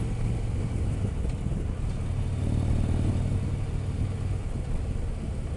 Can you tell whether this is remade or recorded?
recorded